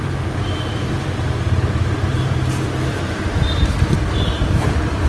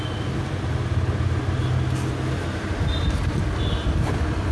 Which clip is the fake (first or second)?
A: first